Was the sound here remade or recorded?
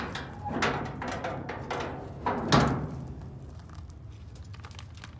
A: recorded